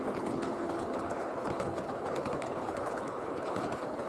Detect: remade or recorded remade